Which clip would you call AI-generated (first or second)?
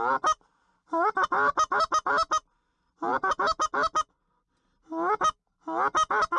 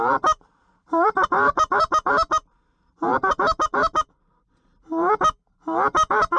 second